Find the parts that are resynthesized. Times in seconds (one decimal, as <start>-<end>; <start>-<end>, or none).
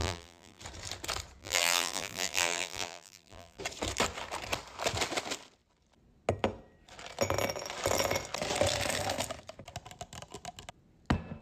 0.0-0.6; 1.4-3.6